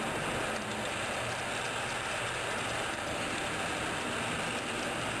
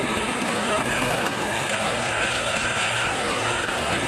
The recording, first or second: first